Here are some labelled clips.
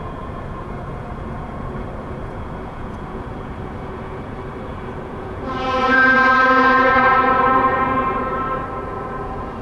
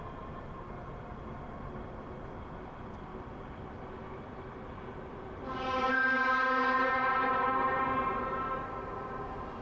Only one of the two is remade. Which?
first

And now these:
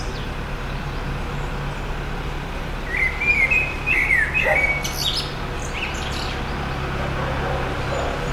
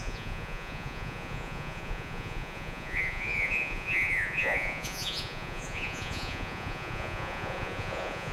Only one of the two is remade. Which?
second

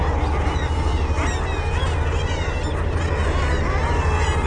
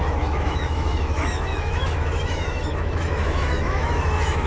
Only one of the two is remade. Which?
second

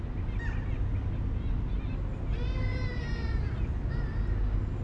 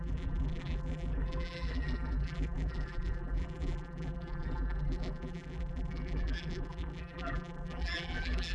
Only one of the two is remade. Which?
second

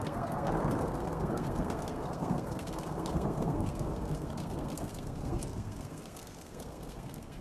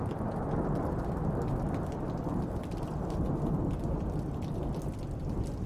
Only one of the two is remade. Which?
first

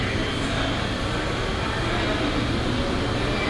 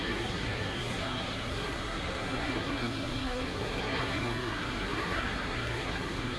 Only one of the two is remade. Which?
second